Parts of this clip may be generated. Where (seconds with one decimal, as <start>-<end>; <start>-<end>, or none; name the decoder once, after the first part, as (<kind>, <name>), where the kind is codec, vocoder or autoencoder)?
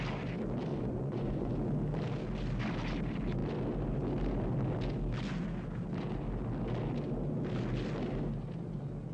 0.7-1.5 (vocoder, Vocos)